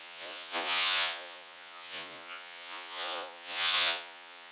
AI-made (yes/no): yes